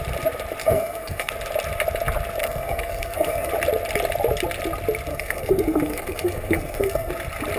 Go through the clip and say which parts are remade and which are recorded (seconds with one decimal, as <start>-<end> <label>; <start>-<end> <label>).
0.0-0.6 recorded; 0.6-1.3 remade; 1.3-2.4 recorded; 2.4-3.5 remade; 3.5-5.1 recorded; 5.1-7.1 remade; 7.1-7.6 recorded